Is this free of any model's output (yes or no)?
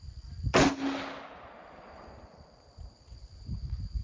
yes